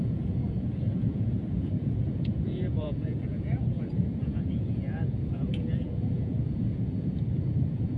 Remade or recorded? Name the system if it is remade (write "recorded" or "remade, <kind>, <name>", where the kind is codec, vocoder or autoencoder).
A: remade, vocoder, Vocos